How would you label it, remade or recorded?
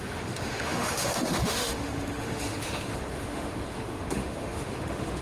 remade